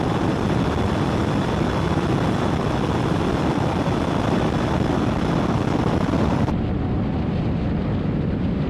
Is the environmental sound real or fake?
fake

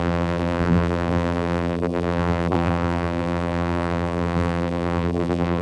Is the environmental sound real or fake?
fake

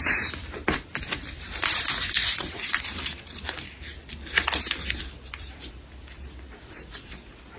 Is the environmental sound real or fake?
fake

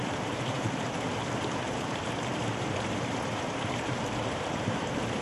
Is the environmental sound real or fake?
fake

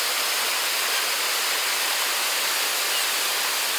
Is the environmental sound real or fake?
real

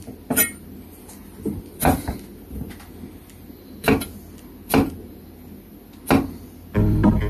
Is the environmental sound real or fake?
real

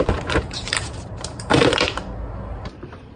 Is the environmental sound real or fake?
fake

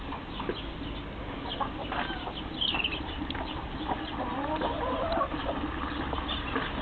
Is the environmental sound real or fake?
real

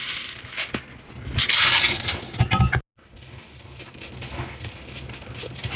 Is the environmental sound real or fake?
real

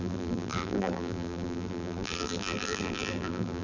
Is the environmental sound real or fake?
fake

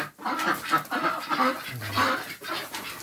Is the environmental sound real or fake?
real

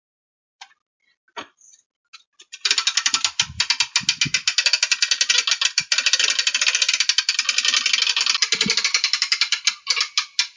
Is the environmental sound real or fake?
real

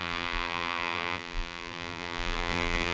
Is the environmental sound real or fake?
fake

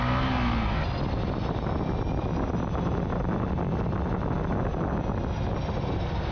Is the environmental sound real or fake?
real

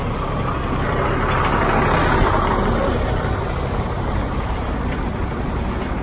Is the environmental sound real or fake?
real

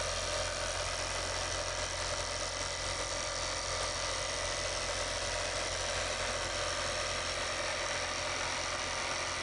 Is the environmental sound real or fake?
real